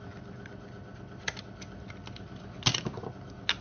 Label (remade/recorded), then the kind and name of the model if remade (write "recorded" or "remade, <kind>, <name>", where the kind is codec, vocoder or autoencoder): recorded